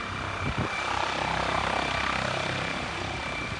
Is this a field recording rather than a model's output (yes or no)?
yes